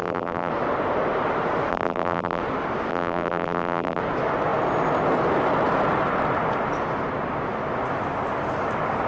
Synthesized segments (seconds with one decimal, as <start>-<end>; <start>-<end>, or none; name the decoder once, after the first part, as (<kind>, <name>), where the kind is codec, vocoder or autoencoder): 0.0-0.5 (vocoder, BigVGAN v2); 1.7-2.4; 2.9-4.0